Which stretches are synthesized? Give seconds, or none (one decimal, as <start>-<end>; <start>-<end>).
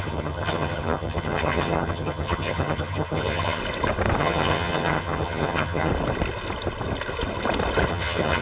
0.0-3.6; 4.2-5.9; 7.9-8.4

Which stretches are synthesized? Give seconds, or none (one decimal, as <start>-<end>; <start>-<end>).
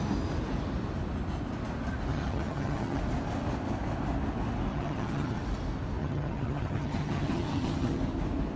2.1-3.0; 4.7-5.4; 6.0-8.0